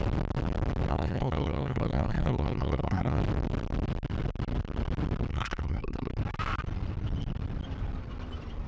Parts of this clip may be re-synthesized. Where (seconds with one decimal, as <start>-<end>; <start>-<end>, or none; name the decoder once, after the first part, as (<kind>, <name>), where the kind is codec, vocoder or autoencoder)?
0.9-3.2 (codec, SNAC); 5.3-6.1